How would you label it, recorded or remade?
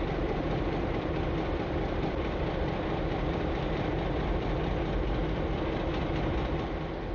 remade